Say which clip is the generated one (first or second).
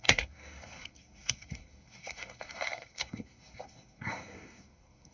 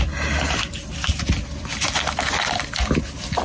first